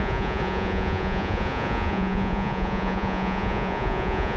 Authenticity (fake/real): fake